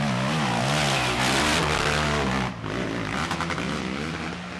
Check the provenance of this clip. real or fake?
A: real